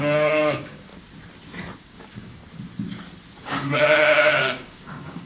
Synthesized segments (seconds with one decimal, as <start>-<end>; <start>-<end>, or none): 0.0-0.9; 1.8-2.4; 3.4-5.3